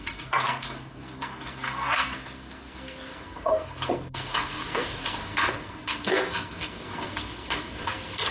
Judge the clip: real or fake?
fake